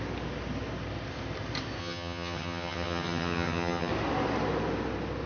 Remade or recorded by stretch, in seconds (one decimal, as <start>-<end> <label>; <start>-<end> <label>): 0.0-1.8 recorded; 1.8-3.9 remade; 3.9-5.3 recorded